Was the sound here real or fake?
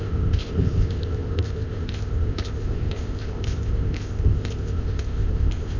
fake